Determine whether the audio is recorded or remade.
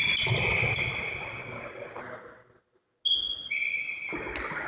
recorded